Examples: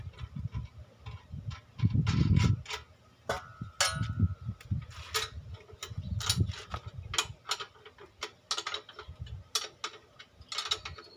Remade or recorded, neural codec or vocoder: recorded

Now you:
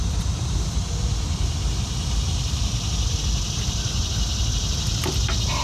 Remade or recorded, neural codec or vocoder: recorded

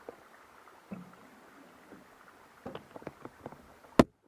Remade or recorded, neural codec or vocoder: recorded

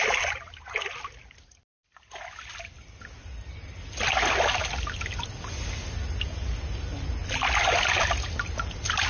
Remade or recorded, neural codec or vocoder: recorded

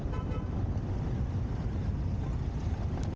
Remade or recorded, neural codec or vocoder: recorded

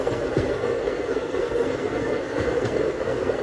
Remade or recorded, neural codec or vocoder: remade, codec, SNAC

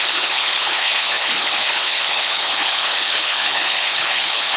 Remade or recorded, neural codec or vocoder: remade, codec, HILCodec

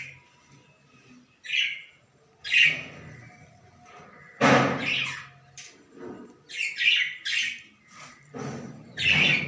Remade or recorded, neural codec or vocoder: recorded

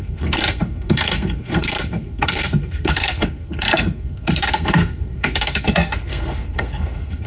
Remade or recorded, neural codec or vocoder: remade, codec, SNAC